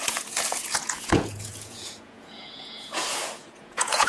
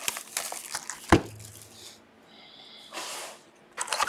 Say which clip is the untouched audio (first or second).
second